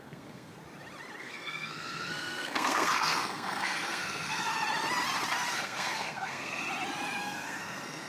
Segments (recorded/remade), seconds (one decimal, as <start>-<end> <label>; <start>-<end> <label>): 0.0-0.6 remade; 0.6-1.2 recorded; 1.2-4.5 remade; 4.5-5.5 recorded; 5.5-6.6 remade; 6.6-7.2 recorded; 7.2-8.1 remade